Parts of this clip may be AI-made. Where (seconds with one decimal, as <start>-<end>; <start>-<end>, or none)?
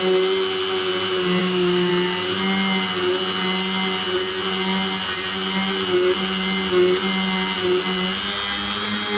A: 1.4-1.9